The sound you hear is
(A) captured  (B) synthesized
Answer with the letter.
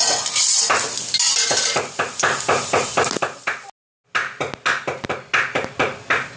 A